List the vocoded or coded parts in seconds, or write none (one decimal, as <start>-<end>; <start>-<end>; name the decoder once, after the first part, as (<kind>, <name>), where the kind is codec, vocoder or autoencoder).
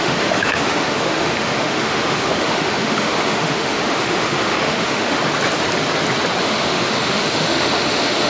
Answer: 0.0-5.2 (autoencoder, DAC-VAE); 6.4-8.3